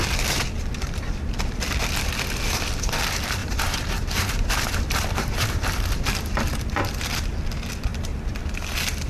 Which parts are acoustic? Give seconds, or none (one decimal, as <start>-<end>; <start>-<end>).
0.0-3.4; 5.9-7.9; 8.4-9.1